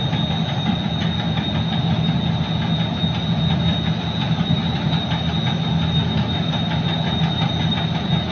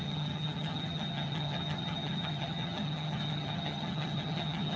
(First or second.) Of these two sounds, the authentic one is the first